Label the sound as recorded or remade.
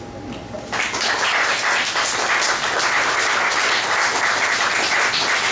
recorded